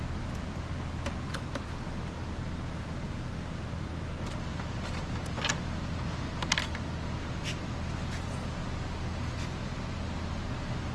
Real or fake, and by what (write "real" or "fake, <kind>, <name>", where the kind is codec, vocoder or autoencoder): real